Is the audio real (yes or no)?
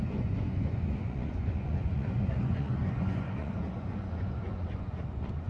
no